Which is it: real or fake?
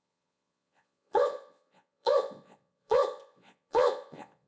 fake